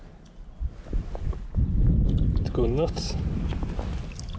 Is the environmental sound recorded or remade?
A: recorded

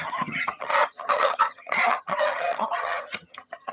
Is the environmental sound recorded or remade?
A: remade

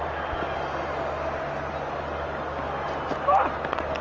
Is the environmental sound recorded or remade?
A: recorded